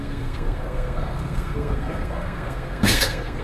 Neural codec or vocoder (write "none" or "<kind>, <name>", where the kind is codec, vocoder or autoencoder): codec, SNAC